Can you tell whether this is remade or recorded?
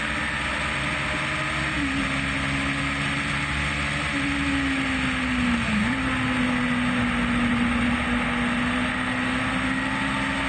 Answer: recorded